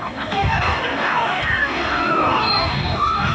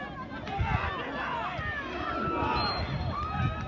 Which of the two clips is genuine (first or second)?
second